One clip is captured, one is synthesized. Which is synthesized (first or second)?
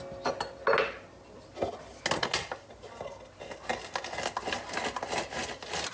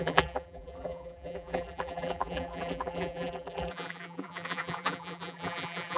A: second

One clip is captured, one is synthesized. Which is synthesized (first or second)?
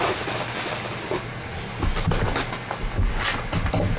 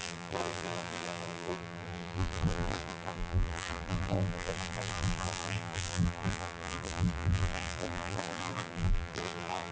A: second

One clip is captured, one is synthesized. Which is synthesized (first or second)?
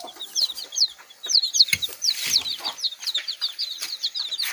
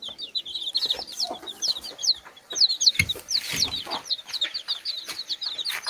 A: first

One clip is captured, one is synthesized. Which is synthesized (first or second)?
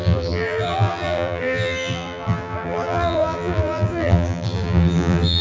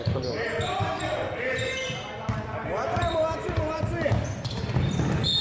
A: first